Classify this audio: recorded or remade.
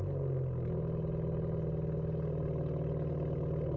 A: recorded